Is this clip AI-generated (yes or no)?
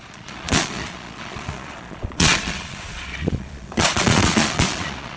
yes